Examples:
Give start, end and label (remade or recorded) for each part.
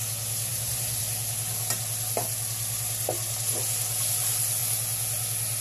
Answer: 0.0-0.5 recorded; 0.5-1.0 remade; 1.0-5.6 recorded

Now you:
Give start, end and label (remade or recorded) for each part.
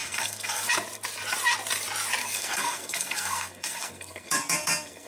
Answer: 0.0-0.7 remade; 0.7-2.2 recorded; 2.2-5.1 remade